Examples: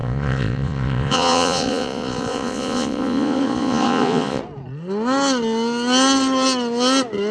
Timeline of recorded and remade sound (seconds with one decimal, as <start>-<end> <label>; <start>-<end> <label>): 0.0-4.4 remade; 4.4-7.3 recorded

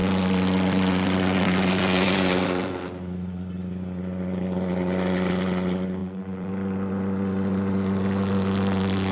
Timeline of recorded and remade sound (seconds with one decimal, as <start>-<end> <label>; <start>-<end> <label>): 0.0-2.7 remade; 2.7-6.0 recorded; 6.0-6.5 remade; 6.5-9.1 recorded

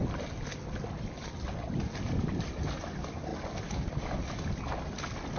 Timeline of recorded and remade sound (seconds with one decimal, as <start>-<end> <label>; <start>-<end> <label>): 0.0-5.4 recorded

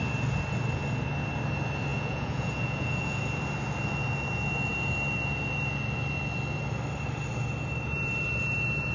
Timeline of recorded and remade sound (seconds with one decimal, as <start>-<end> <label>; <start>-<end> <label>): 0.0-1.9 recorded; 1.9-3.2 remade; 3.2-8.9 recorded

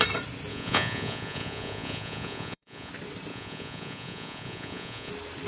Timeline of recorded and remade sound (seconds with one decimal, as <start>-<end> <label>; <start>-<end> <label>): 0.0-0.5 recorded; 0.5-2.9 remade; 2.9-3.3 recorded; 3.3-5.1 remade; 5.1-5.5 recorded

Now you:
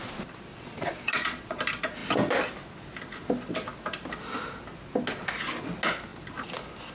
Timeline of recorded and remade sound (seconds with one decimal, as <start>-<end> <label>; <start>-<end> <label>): 0.0-0.5 recorded; 0.5-1.6 remade; 1.6-6.9 recorded

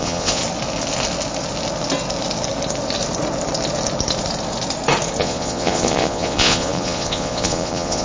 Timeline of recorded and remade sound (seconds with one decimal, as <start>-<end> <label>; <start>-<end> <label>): 0.0-0.4 remade; 0.4-5.2 recorded; 5.2-8.0 remade

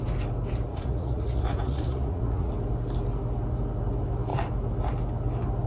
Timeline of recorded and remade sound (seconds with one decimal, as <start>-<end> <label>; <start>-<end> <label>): 0.0-0.7 recorded; 0.7-2.5 remade; 2.5-5.7 recorded